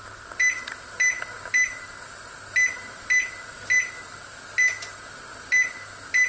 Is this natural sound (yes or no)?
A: yes